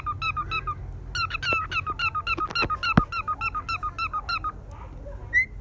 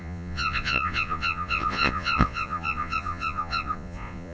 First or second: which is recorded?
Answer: first